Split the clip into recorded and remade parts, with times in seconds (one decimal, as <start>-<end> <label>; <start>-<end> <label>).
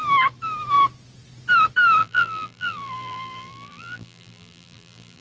0.0-2.0 recorded; 2.0-5.2 remade